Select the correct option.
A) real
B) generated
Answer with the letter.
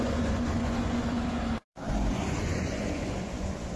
B